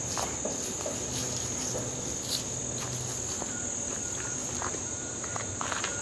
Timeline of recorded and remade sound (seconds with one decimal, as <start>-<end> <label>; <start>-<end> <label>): 0.0-4.4 recorded; 4.4-6.0 remade